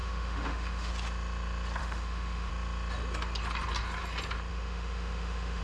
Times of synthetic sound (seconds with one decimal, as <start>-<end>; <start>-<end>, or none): 0.0-0.9; 1.8-2.5; 4.5-5.6